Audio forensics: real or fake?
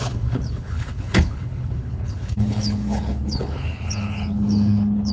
fake